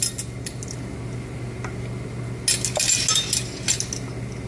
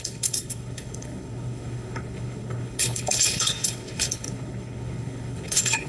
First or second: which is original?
first